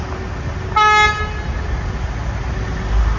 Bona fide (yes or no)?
yes